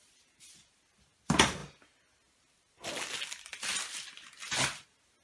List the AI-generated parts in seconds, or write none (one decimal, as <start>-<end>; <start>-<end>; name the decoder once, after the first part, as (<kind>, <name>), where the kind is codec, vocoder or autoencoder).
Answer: none